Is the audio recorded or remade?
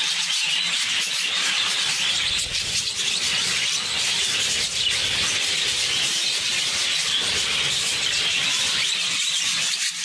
remade